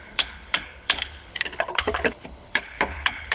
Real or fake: fake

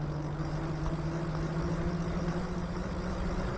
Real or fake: real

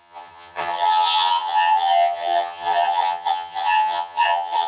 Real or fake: fake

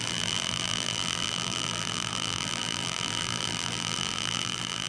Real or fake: fake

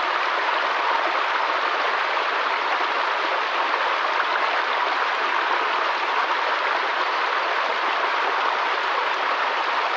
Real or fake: real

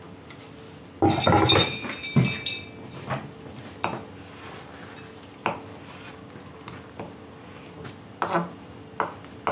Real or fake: real